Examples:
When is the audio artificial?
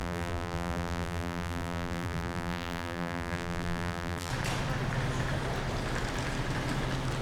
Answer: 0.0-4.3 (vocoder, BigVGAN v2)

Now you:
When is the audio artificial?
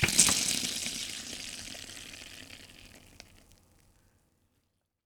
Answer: 0.8-1.3 (vocoder, BigVGAN v2)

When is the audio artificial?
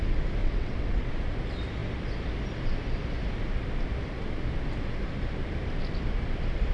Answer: 0.4-1.1 (vocoder, WaveNeXt)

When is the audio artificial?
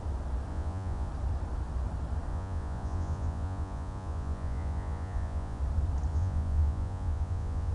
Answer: 0.5-1.1 (vocoder, Vocos); 2.3-5.6; 6.1-7.7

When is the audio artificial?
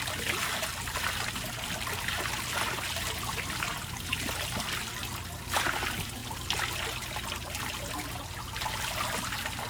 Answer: none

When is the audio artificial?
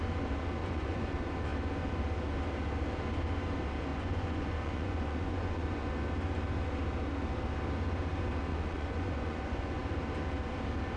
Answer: 0.6-1.1 (vocoder, Vocos); 3.9-5.9; 8.5-9.8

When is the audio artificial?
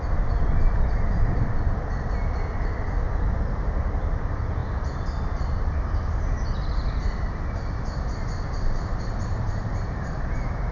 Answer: 4.6-9.0 (vocoder, BigVGAN v2)